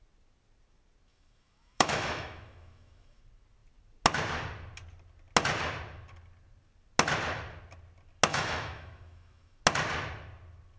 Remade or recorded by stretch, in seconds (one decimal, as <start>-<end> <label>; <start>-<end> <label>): 0.0-1.1 recorded; 1.1-3.2 remade; 3.2-8.3 recorded; 8.3-9.6 remade; 9.6-10.8 recorded